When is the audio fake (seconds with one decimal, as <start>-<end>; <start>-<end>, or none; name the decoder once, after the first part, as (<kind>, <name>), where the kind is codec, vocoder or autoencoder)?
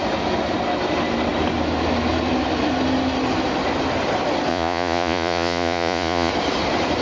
4.5-6.3 (vocoder, Vocos)